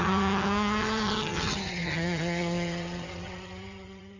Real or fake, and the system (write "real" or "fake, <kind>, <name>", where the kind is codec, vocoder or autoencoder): fake, vocoder, HiFi-GAN